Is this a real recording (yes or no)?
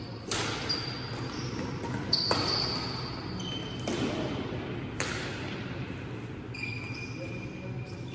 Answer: yes